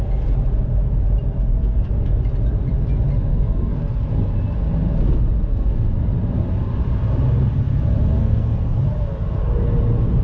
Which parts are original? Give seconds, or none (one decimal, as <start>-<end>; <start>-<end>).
0.0-1.5; 2.2-3.3; 4.0-5.5; 6.1-8.2; 8.8-10.2